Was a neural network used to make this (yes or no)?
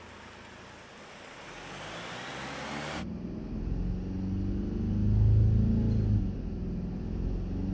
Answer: no